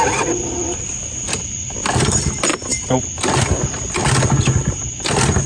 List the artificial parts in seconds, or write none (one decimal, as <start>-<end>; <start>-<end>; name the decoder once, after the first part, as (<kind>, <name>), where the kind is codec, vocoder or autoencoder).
none